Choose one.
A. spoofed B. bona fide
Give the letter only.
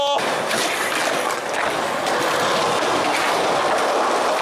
B